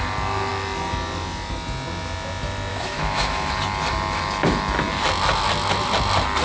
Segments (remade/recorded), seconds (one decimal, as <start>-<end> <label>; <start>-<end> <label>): 0.0-2.7 recorded; 2.7-3.5 remade; 3.5-6.4 recorded